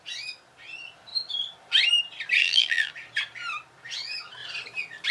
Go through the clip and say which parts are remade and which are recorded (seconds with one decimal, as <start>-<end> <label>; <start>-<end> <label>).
0.0-2.4 recorded; 2.4-2.9 remade; 2.9-5.1 recorded